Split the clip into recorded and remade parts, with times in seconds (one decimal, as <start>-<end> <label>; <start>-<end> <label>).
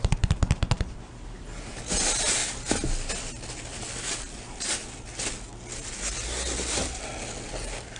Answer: 0.0-8.0 recorded